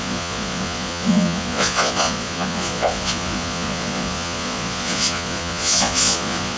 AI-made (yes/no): yes